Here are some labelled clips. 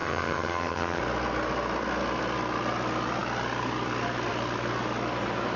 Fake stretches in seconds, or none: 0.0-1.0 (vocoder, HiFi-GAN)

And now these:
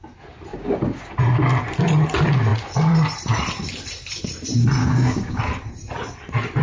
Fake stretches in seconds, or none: 0.5-1.1 (codec, DAC); 4.8-5.4

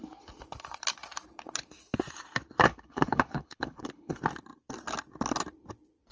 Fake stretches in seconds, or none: 2.7-4.2 (codec, HILCodec)

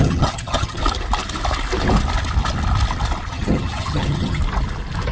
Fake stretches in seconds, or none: 0.0-0.8 (vocoder, HiFi-GAN); 3.3-4.4

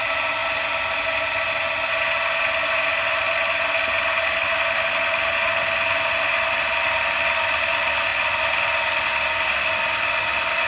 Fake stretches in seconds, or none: none

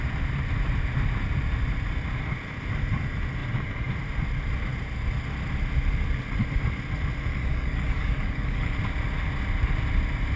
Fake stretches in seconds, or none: 7.3-8.8 (codec, DAC)

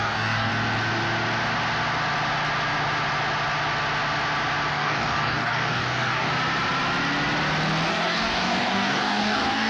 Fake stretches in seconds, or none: 0.0-0.5 (codec, DAC); 4.7-6.3; 7.9-9.7

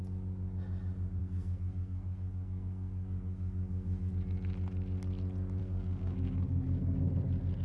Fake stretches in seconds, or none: 1.2-4.1 (codec, SNAC); 5.6-7.1